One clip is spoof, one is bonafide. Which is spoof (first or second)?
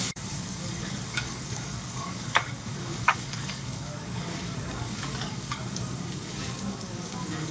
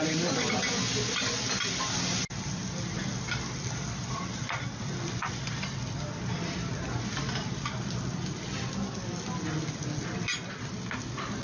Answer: first